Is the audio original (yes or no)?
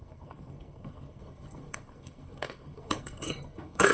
no